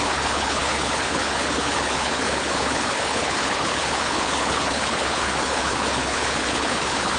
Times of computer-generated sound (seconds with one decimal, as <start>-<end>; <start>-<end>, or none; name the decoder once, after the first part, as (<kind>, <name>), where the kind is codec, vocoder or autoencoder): 0.0-7.2 (codec, HILCodec)